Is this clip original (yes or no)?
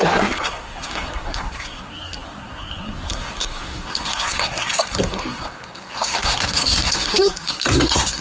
no